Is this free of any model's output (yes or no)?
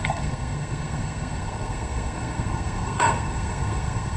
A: no